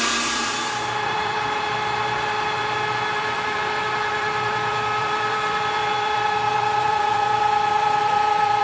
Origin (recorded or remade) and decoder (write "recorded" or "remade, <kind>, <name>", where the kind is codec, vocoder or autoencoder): remade, vocoder, BigVGAN v2